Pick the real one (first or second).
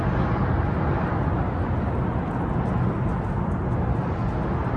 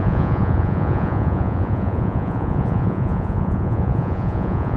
first